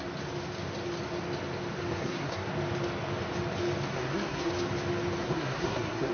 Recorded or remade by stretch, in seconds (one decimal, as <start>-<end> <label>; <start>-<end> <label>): 0.0-1.9 recorded; 1.9-2.5 remade; 2.5-3.9 recorded; 3.9-4.5 remade; 4.5-5.2 recorded; 5.2-6.1 remade